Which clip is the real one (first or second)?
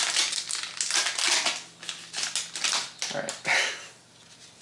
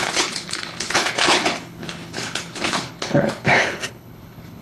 first